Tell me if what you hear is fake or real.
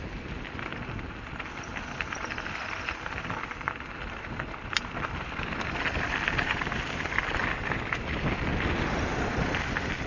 real